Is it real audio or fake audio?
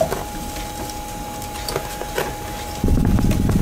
real